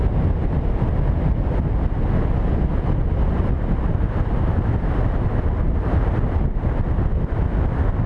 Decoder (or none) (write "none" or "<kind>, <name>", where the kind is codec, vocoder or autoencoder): none